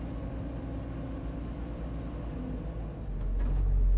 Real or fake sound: real